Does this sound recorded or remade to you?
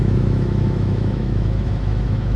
remade